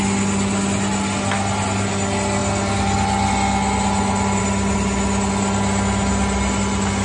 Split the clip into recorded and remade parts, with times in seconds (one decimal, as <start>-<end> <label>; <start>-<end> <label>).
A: 0.0-7.0 recorded